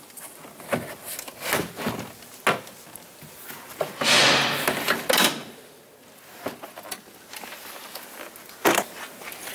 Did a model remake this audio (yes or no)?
no